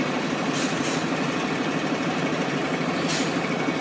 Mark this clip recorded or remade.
recorded